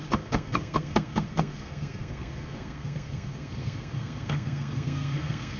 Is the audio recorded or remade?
remade